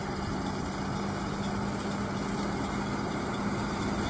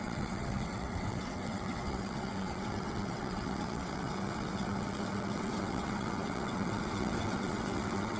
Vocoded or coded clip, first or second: second